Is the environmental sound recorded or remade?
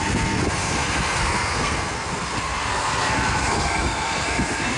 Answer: remade